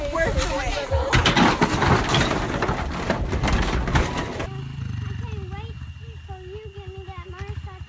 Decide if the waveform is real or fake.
real